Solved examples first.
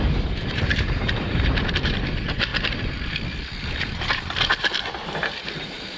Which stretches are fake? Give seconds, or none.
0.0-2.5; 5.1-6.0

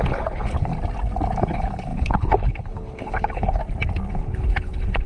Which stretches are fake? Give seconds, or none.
0.0-0.7; 1.4-3.6; 4.1-5.1

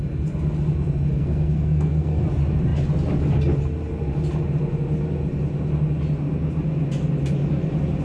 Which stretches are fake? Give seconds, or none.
1.1-2.2

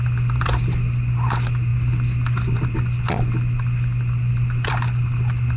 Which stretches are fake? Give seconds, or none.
none